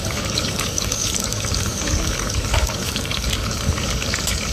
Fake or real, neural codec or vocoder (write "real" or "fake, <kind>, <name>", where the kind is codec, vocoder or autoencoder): fake, codec, DAC